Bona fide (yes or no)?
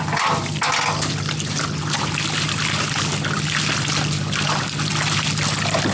yes